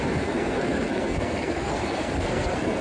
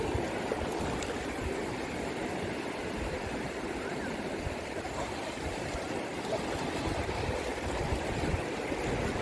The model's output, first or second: first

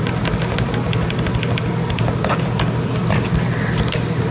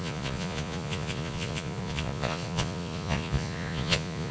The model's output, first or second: second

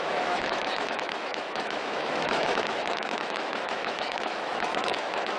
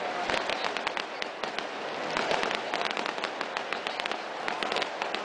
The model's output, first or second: first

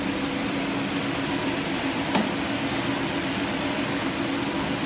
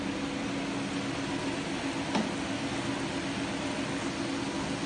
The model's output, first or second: first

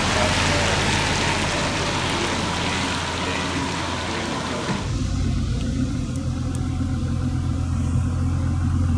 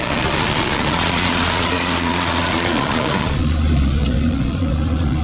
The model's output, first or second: second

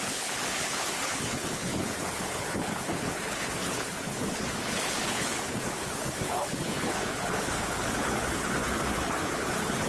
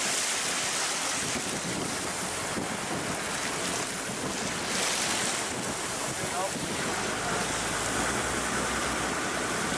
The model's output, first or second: first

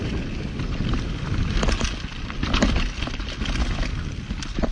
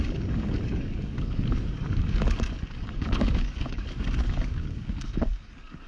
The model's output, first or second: second